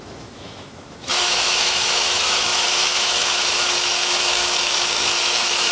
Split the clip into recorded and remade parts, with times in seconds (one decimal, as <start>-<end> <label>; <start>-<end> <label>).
0.0-5.7 remade